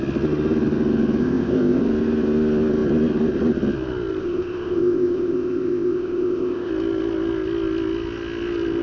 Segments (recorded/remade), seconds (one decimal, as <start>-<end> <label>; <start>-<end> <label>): 0.0-1.2 recorded; 1.2-1.8 remade; 1.8-4.2 recorded; 4.2-6.7 remade; 6.7-8.8 recorded